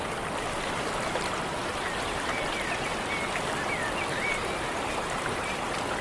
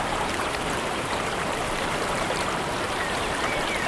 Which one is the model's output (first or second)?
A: second